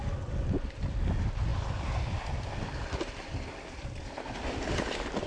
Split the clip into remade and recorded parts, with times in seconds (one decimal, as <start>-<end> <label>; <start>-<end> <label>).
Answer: 0.0-5.3 recorded